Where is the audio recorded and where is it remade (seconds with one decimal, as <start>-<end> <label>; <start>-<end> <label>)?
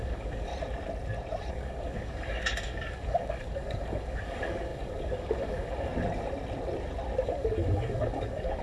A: 0.0-0.5 remade; 0.5-1.5 recorded; 1.5-5.9 remade; 5.9-7.2 recorded; 7.2-8.6 remade